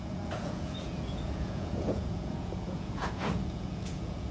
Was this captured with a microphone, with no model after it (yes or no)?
no